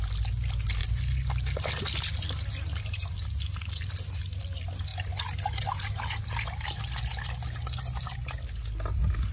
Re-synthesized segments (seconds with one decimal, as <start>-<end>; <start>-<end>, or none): none